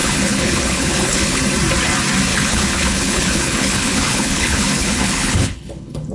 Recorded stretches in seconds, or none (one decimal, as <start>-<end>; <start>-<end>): 1.4-2.3

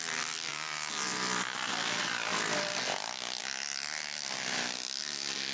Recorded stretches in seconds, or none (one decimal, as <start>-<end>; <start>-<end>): 0.0-5.5

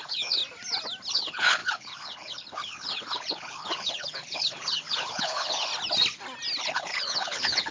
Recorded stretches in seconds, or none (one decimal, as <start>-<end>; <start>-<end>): 0.4-1.1; 5.7-6.6

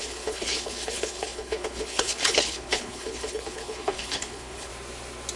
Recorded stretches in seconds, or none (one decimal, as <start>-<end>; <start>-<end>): 4.7-5.4